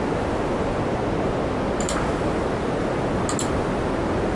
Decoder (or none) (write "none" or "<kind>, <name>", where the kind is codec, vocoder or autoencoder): none